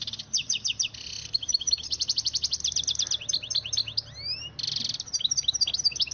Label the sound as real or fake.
real